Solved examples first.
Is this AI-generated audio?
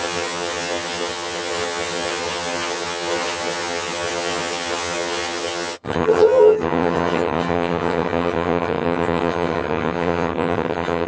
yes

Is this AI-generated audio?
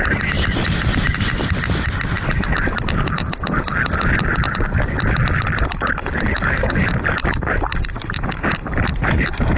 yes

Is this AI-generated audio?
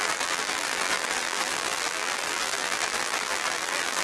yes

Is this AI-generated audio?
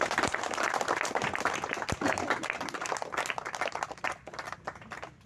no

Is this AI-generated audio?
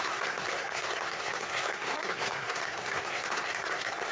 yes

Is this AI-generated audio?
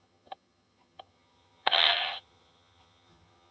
yes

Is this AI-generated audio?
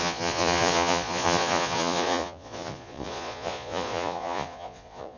yes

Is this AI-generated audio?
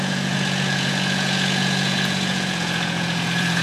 yes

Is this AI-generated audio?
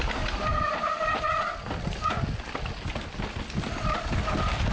no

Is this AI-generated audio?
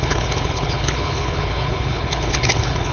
yes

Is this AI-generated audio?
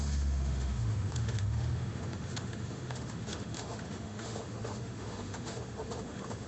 yes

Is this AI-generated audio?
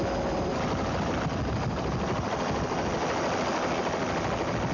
no